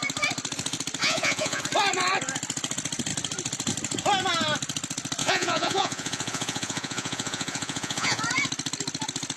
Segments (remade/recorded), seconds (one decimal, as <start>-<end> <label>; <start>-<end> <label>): 0.0-1.0 recorded; 1.0-1.6 remade; 1.6-5.2 recorded; 5.2-8.2 remade; 8.2-9.4 recorded